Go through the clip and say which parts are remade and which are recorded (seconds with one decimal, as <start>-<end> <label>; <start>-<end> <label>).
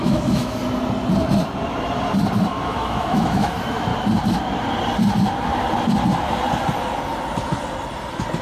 0.0-0.6 remade; 0.6-2.5 recorded; 2.5-3.9 remade; 3.9-8.4 recorded